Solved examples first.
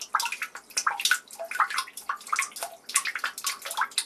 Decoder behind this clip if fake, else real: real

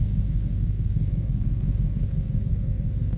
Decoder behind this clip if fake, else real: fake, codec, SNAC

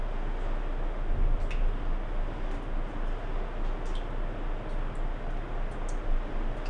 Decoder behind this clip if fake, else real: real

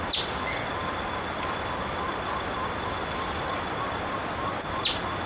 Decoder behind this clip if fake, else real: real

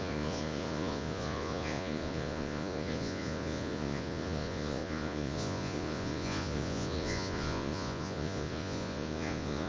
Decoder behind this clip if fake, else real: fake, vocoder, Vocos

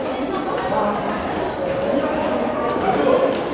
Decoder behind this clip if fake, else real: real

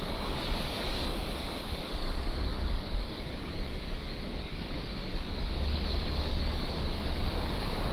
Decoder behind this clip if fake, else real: fake, codec, DAC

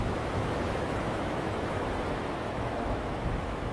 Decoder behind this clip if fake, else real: fake, autoencoder, DAC-VAE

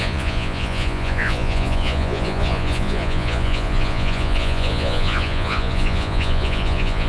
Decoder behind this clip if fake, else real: fake, vocoder, Vocos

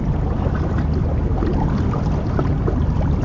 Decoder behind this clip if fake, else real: real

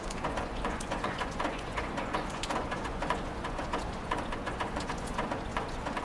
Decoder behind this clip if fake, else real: fake, vocoder, Vocos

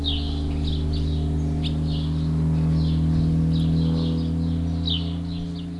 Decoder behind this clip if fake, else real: real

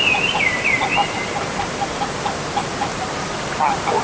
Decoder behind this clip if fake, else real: real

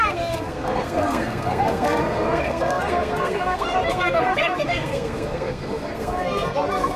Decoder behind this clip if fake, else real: fake, codec, SNAC